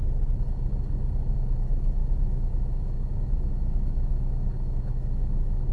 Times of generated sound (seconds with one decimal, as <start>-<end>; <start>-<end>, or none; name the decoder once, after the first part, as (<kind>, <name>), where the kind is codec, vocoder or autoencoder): 2.0-5.7 (autoencoder, DAC-VAE)